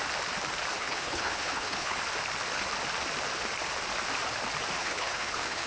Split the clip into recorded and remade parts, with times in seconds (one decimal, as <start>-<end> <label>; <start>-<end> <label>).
0.0-0.8 recorded; 0.8-2.0 remade; 2.0-4.8 recorded; 4.8-5.7 remade